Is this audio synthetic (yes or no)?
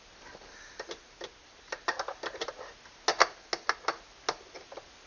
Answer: no